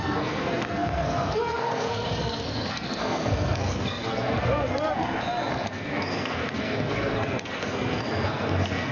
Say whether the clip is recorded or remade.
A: remade